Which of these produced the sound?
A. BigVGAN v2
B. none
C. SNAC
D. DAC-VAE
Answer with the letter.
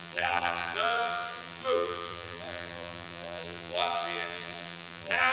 A